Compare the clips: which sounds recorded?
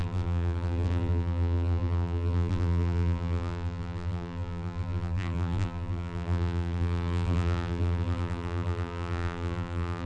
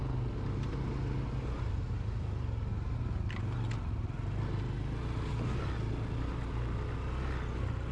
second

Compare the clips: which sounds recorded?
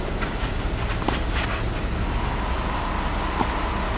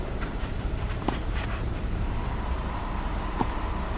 first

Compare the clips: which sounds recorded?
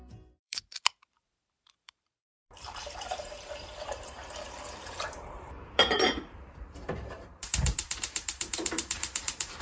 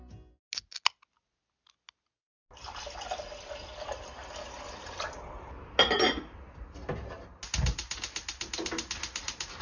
second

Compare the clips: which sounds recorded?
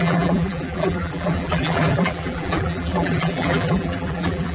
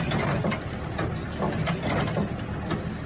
second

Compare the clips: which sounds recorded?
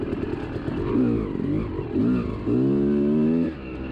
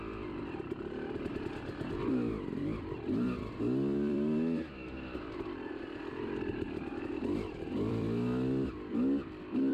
first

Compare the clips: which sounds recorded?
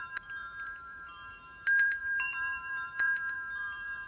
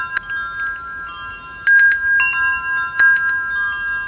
second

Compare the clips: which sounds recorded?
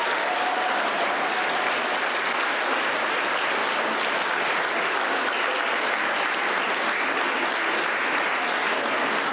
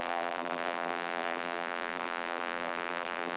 first